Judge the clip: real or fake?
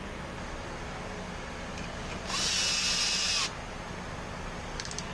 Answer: real